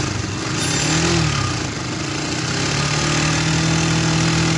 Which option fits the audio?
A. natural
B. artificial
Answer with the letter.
A